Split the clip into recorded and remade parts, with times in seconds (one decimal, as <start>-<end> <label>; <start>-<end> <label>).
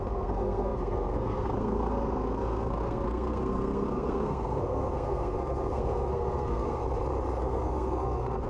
0.0-6.8 remade; 6.8-7.4 recorded; 7.4-8.5 remade